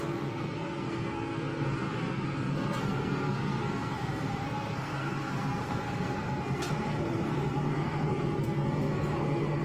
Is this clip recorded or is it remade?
remade